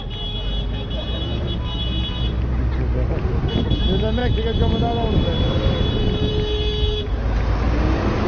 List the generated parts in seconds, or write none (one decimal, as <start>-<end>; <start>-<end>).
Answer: none